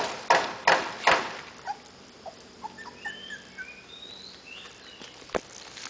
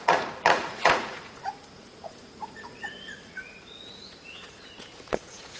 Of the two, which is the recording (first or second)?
first